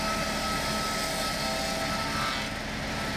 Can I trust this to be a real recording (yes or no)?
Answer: yes